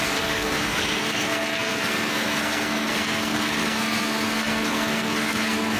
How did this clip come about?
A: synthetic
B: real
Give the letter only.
A